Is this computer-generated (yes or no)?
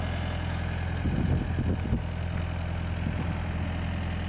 no